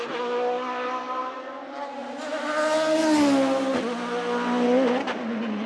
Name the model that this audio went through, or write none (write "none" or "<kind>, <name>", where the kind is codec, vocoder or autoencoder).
none